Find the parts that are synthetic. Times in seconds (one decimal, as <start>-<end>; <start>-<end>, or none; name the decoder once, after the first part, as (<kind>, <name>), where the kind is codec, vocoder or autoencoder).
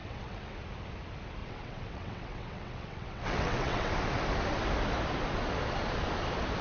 0.0-0.6 (vocoder, WaveNeXt); 1.4-3.9